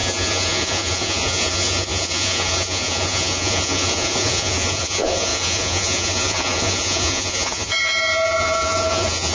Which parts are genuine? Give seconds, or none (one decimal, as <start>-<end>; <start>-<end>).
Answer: none